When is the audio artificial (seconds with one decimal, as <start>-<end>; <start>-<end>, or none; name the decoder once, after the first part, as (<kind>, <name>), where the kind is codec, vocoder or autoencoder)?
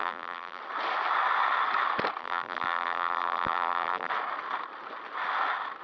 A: 0.0-0.6 (vocoder, BigVGAN v2); 2.2-4.1